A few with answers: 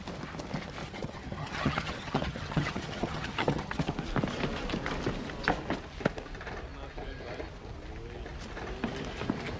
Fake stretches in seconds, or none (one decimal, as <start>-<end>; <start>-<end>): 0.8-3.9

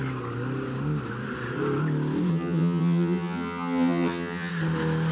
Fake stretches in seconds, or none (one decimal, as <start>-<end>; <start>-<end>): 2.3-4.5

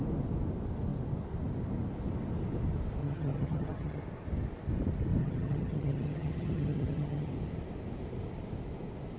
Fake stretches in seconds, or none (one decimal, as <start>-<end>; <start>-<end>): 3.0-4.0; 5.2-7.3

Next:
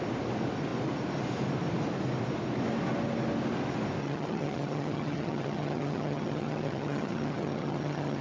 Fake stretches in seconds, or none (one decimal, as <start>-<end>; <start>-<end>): 4.0-8.2